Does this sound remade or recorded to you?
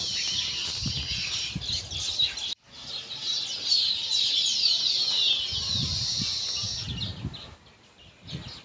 recorded